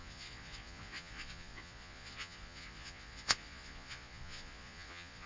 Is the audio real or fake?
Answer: fake